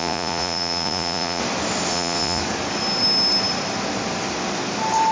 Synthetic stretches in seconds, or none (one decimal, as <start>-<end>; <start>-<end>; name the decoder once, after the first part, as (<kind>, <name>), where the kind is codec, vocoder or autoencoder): 0.0-1.4 (vocoder, Vocos); 1.9-2.4